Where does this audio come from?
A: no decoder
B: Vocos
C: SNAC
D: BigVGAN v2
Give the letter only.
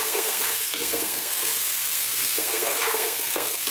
C